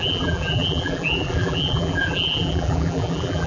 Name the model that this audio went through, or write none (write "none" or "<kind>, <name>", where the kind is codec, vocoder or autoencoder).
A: vocoder, BigVGAN v2